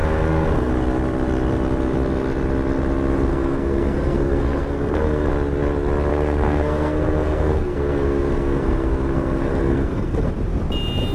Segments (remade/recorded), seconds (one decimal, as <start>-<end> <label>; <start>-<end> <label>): 0.0-0.7 remade; 0.7-3.3 recorded; 3.3-5.3 remade; 5.3-6.1 recorded; 6.1-10.3 remade; 10.3-11.1 recorded